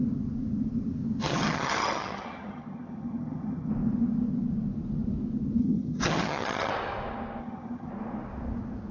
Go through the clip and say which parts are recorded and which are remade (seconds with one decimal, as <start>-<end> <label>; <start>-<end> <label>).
0.0-1.3 recorded; 1.3-3.7 remade; 3.7-5.6 recorded; 5.6-6.7 remade; 6.7-7.4 recorded; 7.4-7.9 remade; 7.9-8.9 recorded